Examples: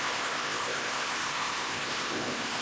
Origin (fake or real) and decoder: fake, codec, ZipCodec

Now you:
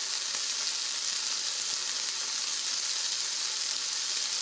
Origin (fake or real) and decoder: real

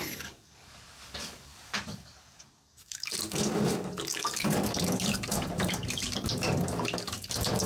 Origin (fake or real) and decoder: fake, codec, DAC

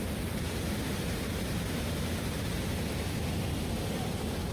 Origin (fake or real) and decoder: real